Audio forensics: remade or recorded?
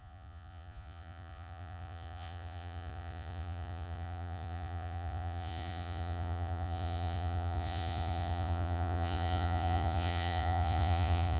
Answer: remade